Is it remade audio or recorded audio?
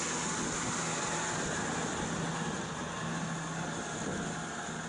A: recorded